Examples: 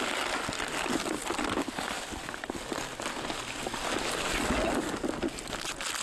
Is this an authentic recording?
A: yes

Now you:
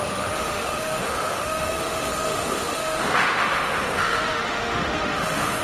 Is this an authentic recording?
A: no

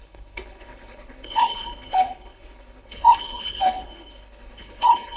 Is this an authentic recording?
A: no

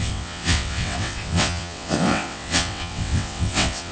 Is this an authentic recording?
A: no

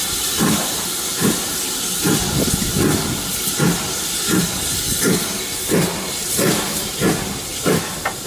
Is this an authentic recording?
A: yes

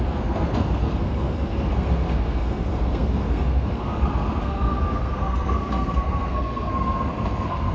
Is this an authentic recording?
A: no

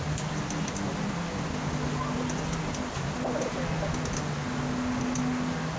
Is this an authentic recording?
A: yes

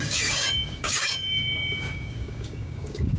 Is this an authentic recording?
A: no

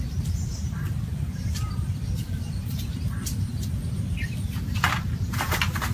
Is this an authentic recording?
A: no